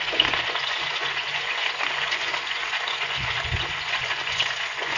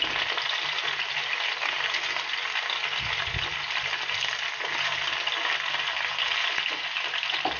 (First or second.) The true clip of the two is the second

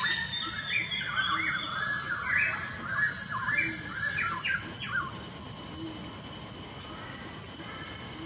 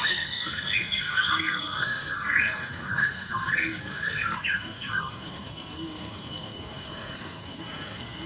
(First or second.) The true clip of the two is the first